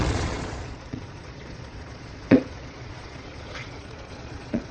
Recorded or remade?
remade